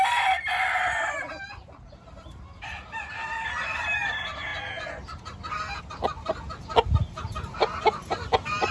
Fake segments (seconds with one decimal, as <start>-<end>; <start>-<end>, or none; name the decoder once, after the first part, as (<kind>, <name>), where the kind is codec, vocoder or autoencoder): none